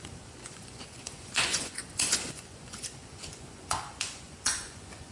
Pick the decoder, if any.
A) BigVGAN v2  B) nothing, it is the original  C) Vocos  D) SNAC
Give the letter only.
C